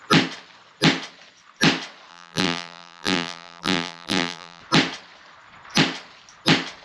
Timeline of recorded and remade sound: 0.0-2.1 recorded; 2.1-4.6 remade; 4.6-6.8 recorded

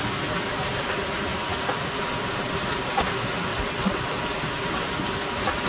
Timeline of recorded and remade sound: 0.0-3.5 recorded; 3.5-4.0 remade; 4.0-5.7 recorded

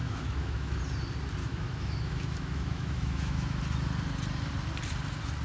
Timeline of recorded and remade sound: 0.0-0.8 remade; 0.8-1.4 recorded; 1.4-3.6 remade; 3.6-5.4 recorded

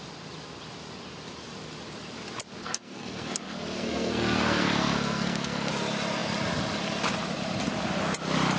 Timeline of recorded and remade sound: 0.0-2.6 recorded; 2.6-5.7 remade; 5.7-8.6 recorded

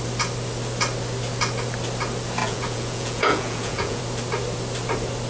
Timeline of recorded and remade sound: 0.0-2.4 recorded; 2.4-4.0 remade; 4.0-5.3 recorded